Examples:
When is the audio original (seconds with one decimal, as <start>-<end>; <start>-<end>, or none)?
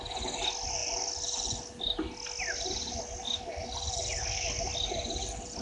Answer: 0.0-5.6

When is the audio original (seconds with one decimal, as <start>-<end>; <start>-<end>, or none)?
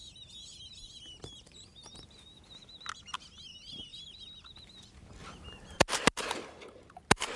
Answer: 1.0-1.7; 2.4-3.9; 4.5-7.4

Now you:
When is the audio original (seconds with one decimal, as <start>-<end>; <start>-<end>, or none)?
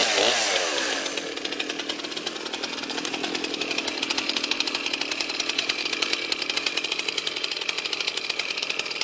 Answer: 0.0-3.1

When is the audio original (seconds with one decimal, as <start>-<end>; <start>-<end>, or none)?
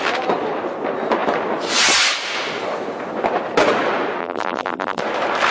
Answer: 0.0-4.2; 5.0-5.5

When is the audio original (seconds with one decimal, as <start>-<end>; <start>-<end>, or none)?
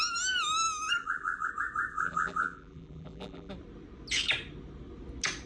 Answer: 0.0-1.0; 1.5-1.9; 3.5-5.5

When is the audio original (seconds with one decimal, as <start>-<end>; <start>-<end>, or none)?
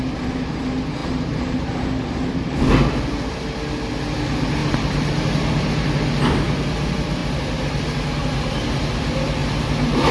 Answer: 0.0-1.0; 3.4-4.6; 5.9-7.2; 8.5-9.4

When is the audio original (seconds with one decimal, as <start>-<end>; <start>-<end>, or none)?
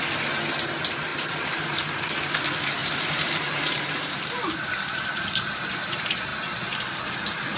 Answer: 0.0-1.1; 2.0-2.8; 5.7-7.6